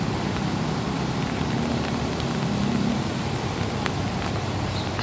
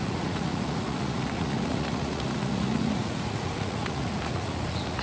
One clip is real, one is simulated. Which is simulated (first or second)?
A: second